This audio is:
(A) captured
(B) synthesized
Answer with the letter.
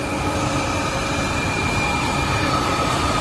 B